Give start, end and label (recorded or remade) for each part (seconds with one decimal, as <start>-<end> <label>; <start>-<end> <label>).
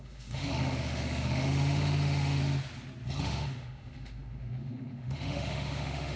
0.0-2.4 remade; 2.4-3.2 recorded; 3.2-6.2 remade